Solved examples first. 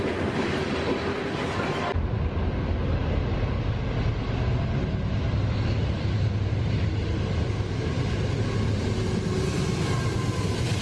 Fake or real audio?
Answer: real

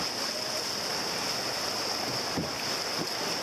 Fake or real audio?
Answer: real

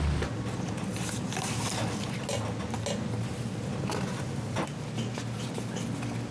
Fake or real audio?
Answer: real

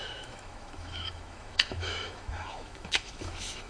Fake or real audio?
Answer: fake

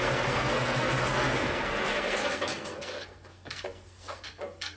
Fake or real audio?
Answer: fake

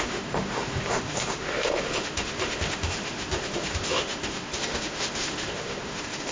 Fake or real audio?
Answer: fake